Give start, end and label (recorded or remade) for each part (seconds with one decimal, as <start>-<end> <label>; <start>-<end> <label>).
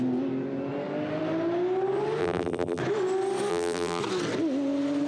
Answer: 0.0-2.2 recorded; 2.2-2.8 remade; 2.8-3.5 recorded; 3.5-4.0 remade; 4.0-5.1 recorded